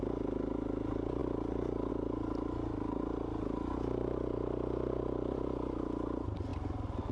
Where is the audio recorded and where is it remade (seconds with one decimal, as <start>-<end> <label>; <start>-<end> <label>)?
0.0-7.1 recorded

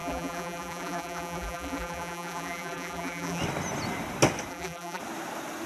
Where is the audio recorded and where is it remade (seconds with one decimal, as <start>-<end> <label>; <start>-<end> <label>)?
0.0-3.4 remade; 3.4-4.5 recorded; 4.5-5.0 remade; 5.0-5.7 recorded

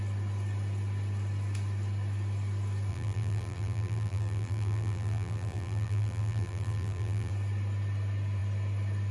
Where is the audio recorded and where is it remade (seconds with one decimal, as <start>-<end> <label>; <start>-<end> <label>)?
0.0-2.9 recorded; 2.9-7.3 remade; 7.3-9.1 recorded

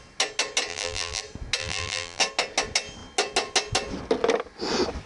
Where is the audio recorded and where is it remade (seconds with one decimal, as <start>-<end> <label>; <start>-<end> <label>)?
0.0-0.7 recorded; 0.7-1.2 remade; 1.2-1.6 recorded; 1.6-2.2 remade; 2.2-5.1 recorded

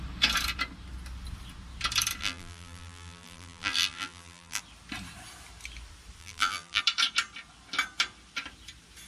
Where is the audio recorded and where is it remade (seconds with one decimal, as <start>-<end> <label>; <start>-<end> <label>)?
0.0-2.2 recorded; 2.2-4.6 remade; 4.6-6.2 recorded; 6.2-6.8 remade; 6.8-9.1 recorded

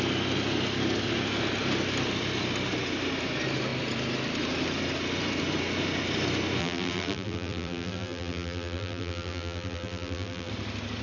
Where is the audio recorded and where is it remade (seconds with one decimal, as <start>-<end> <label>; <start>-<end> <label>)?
0.0-6.6 recorded; 6.6-10.5 remade; 10.5-11.0 recorded